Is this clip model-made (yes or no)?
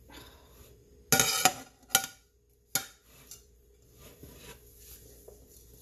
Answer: no